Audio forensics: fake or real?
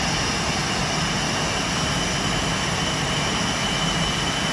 real